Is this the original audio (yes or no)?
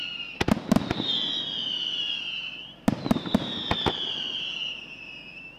yes